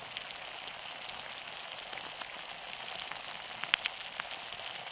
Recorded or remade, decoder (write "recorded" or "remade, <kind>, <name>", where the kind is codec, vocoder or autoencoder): recorded